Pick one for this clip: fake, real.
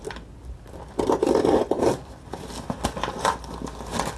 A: real